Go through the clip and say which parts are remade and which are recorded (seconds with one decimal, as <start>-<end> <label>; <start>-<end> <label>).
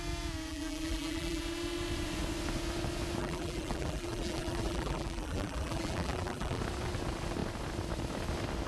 0.0-0.5 recorded; 0.5-1.4 remade; 1.4-3.2 recorded; 3.2-6.6 remade; 6.6-8.7 recorded